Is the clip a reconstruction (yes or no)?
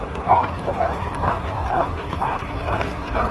yes